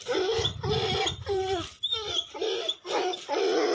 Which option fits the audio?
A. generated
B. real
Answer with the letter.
A